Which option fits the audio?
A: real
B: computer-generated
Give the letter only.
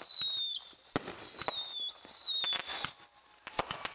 A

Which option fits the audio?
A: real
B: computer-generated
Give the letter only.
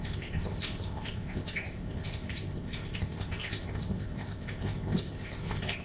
B